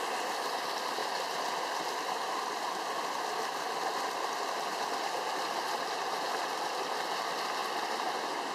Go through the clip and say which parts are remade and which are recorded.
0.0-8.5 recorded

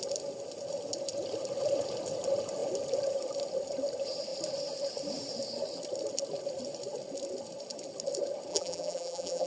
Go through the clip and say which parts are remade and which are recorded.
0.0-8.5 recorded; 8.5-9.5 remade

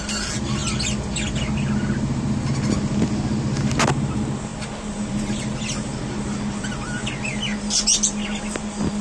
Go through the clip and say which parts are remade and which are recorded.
0.0-9.0 recorded

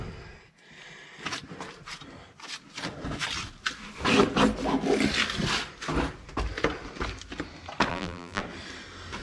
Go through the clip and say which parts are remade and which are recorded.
0.0-7.9 recorded; 7.9-8.4 remade; 8.4-9.2 recorded